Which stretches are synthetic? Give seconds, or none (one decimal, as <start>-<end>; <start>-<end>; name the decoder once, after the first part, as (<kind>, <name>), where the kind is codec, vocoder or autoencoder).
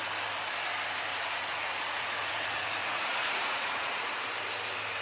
1.1-4.1 (vocoder, Vocos)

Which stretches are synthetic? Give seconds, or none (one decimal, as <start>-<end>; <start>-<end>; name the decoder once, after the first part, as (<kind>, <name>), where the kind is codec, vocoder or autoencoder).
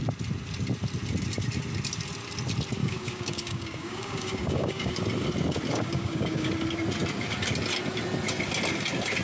2.8-4.9 (codec, DAC); 5.7-6.5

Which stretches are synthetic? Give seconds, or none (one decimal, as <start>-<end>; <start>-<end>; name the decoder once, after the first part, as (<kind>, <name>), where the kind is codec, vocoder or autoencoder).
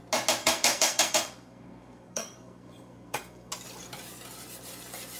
0.4-3.5 (codec, SNAC)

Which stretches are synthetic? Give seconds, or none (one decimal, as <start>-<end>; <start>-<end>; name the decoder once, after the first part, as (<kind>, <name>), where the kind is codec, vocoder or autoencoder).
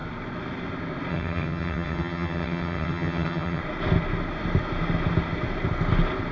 1.1-3.6 (vocoder, HiFi-GAN)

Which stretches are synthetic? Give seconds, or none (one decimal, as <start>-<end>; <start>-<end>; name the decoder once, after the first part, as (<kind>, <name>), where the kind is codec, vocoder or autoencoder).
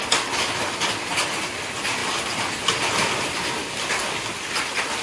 2.0-3.9 (vocoder, BigVGAN v2)